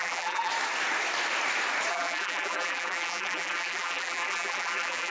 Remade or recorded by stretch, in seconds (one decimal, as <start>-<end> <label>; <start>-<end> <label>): 0.0-0.5 remade; 0.5-1.9 recorded; 1.9-5.1 remade